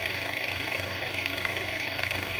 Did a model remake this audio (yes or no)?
yes